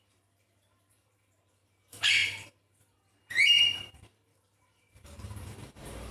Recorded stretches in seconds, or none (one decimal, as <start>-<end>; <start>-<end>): none

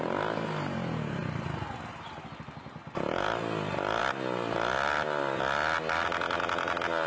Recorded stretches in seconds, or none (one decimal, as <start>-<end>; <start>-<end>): 0.0-7.1

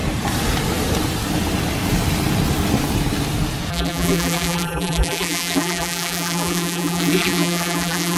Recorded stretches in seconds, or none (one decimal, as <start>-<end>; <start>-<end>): 0.0-3.7